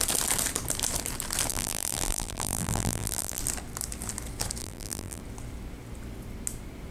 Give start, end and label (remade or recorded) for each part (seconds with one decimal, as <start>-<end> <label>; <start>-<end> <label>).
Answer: 0.0-1.5 recorded; 1.5-3.4 remade; 3.4-4.6 recorded; 4.6-5.2 remade; 5.2-6.9 recorded